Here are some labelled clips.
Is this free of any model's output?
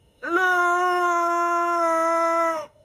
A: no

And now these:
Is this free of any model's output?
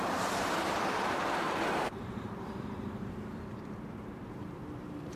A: no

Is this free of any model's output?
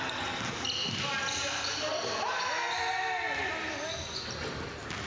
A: yes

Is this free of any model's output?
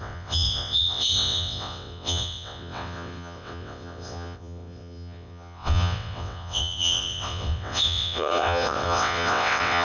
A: no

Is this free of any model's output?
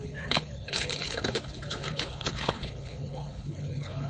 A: no